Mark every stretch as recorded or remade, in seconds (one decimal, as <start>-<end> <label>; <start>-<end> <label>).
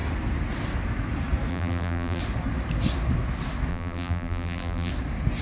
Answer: 0.0-1.5 recorded; 1.5-2.2 remade; 2.2-3.7 recorded; 3.7-4.9 remade; 4.9-5.4 recorded